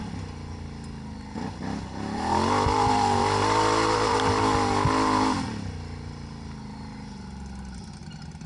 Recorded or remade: recorded